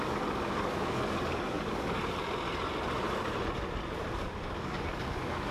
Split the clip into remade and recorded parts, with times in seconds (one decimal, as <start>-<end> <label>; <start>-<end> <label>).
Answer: 0.0-2.2 remade; 2.2-4.2 recorded; 4.2-5.5 remade